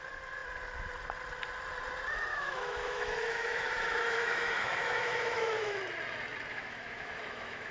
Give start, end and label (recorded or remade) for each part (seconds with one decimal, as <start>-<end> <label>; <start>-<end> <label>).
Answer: 0.0-2.3 recorded; 2.3-5.8 remade; 5.8-6.5 recorded; 6.5-7.7 remade